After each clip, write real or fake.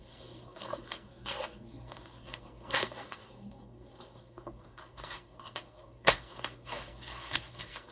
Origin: fake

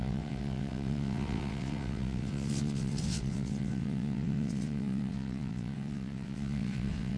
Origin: fake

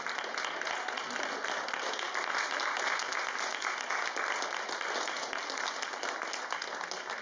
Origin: real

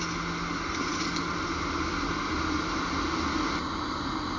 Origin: real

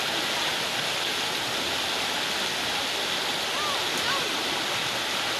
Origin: real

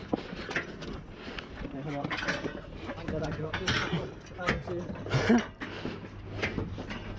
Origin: real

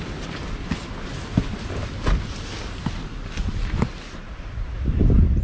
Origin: real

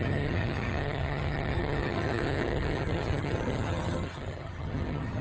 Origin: fake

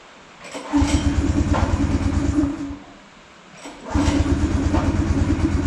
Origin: real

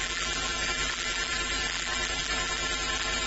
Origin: fake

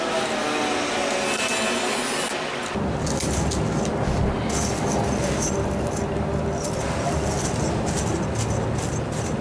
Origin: real